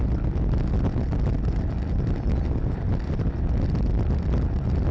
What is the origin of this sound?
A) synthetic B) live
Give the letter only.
B